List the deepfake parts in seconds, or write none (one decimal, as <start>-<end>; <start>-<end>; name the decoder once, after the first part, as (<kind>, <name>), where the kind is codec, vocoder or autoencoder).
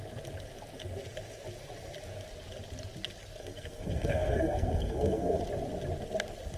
3.4-5.4 (codec, SNAC)